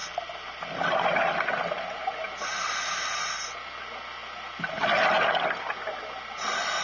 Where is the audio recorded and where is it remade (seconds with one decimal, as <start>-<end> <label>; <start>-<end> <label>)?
0.0-6.8 recorded